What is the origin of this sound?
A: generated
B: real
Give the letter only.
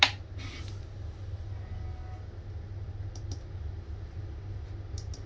B